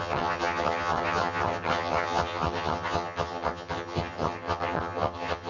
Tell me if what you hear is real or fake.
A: fake